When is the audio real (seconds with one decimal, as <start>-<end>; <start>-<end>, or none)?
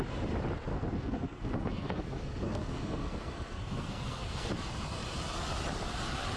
0.0-0.7; 4.5-6.4